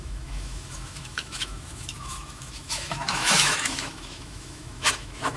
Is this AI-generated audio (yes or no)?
yes